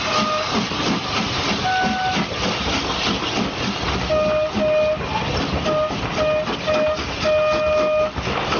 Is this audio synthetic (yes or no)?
no